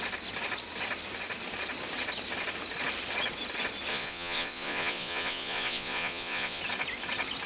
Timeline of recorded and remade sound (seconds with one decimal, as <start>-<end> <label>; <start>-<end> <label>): 0.0-3.9 recorded; 3.9-6.6 remade; 6.6-7.5 recorded